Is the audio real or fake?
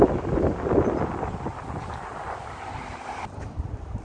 real